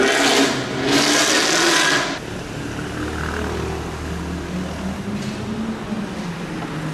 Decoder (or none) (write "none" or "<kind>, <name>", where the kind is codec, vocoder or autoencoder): none